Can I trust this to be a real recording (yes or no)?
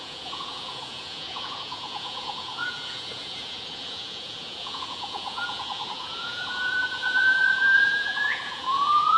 no